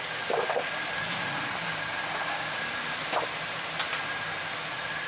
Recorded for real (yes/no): yes